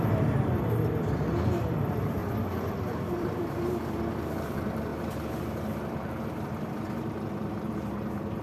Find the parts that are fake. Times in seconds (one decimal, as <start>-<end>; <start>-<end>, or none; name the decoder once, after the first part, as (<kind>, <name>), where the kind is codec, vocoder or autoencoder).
0.0-2.2 (vocoder, BigVGAN v2); 2.8-4.9; 5.4-8.4